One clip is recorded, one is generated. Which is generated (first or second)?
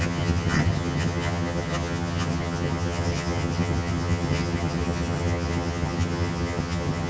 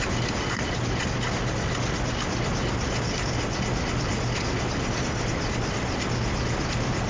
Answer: first